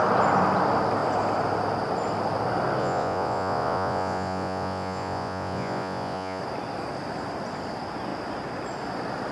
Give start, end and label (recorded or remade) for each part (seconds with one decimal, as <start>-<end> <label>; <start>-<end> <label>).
0.0-2.8 recorded; 2.8-6.4 remade; 6.4-9.3 recorded